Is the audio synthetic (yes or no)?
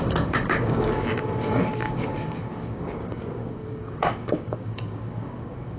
yes